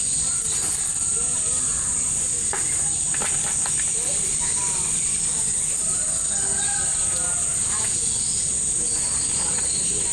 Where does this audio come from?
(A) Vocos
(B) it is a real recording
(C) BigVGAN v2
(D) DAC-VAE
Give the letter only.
B